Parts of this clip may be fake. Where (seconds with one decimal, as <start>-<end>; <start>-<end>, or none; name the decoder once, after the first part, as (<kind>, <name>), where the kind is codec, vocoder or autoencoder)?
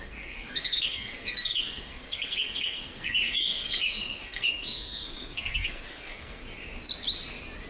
0.0-6.4 (codec, SNAC)